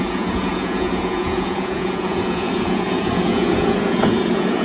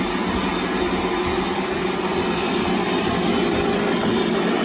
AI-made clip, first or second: first